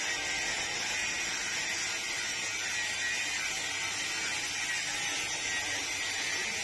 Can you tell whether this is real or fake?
real